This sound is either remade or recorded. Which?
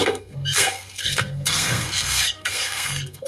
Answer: remade